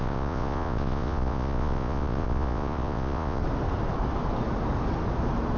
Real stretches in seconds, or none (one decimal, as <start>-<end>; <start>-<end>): 3.4-5.6